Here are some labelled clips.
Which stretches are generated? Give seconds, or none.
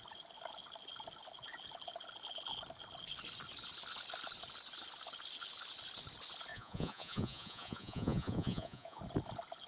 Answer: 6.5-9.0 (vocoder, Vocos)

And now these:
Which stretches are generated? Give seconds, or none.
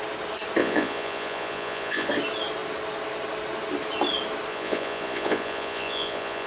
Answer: 0.6-2.1 (vocoder, Vocos); 4.5-6.5